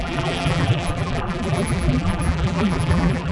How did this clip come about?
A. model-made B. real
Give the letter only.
A